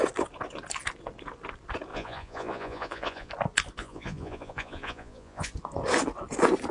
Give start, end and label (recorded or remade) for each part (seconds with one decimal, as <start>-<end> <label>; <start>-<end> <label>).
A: 0.0-1.9 recorded; 1.9-3.3 remade; 3.3-3.8 recorded; 3.8-5.5 remade; 5.5-6.7 recorded